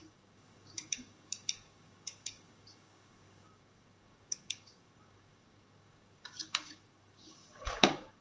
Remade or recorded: remade